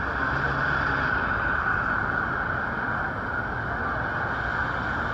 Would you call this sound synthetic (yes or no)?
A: no